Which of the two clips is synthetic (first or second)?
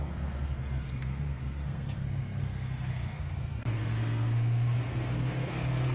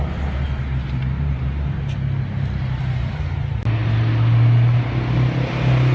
first